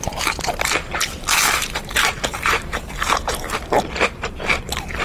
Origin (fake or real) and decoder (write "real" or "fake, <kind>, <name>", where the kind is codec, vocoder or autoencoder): fake, vocoder, BigVGAN v2